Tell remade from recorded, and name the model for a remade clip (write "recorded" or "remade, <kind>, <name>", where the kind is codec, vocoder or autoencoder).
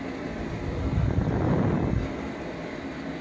recorded